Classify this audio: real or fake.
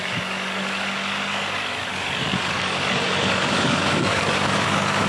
fake